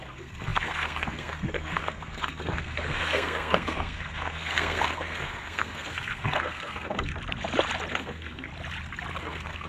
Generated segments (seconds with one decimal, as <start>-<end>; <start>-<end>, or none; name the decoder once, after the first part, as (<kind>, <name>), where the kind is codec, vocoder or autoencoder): 0.0-7.1 (codec, SNAC); 7.9-8.5; 9.2-9.7